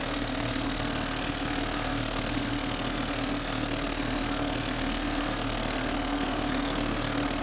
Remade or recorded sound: remade